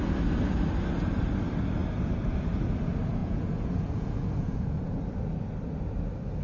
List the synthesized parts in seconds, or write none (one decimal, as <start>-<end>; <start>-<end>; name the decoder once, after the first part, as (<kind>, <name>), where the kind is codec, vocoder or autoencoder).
3.2-5.0 (vocoder, Vocos)